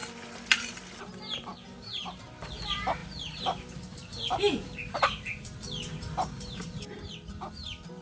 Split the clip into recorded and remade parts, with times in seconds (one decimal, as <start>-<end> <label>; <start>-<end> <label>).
0.0-1.0 recorded; 1.0-8.0 remade